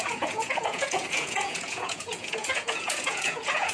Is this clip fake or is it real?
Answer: fake